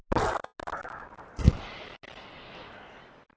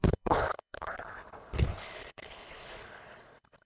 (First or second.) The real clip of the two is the first